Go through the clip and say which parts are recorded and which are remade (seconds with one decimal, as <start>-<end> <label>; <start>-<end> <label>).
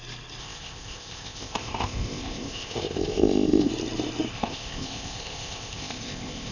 0.0-0.4 recorded; 0.4-3.7 remade; 3.7-4.3 recorded; 4.3-6.5 remade